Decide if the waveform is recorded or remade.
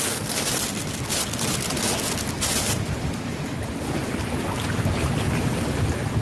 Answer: recorded